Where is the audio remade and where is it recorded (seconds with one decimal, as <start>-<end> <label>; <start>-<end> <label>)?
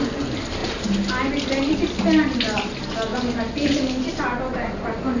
0.0-5.2 recorded